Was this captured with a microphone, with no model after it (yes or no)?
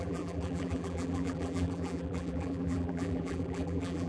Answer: no